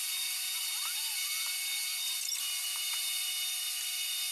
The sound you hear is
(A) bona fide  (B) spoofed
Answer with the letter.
A